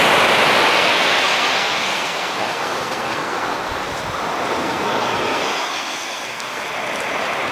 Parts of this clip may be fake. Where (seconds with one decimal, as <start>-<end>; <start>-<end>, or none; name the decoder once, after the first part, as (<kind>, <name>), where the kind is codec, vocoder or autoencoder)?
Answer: 0.7-3.9 (codec, SNAC); 4.6-6.6